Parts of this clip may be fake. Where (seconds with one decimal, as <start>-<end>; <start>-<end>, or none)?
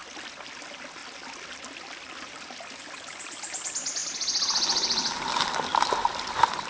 none